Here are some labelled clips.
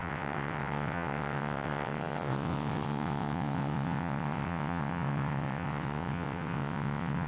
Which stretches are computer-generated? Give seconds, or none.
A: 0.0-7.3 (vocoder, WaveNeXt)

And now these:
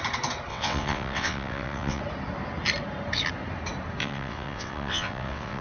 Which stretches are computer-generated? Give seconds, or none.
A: 0.5-2.0 (vocoder, WaveNeXt); 4.0-5.6

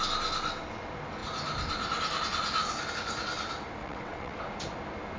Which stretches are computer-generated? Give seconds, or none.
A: 3.8-4.4 (vocoder, WaveNeXt)